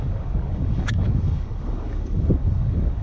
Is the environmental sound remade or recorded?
remade